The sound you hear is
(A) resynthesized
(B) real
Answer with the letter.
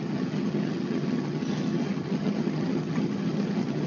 A